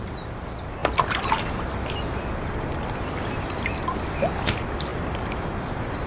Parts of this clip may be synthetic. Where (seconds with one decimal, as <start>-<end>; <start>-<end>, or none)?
none